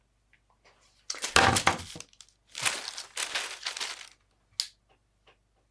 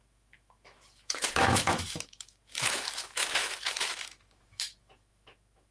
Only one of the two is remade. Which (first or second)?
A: second